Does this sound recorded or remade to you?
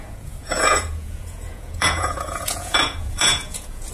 remade